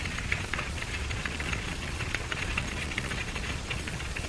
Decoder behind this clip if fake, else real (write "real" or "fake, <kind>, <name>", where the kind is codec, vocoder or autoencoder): fake, vocoder, Vocos